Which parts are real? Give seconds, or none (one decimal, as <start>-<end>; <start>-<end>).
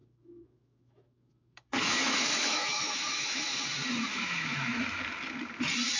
3.6-4.1; 5.0-6.0